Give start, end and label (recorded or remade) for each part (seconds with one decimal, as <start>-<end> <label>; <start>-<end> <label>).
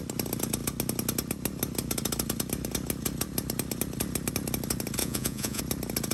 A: 0.0-5.0 recorded; 5.0-5.6 remade; 5.6-6.1 recorded